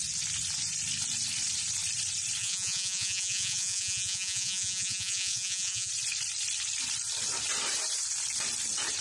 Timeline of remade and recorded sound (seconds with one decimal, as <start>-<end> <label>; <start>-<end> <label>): 0.0-2.4 recorded; 2.4-5.9 remade; 5.9-9.0 recorded